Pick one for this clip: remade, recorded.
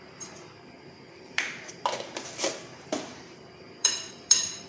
remade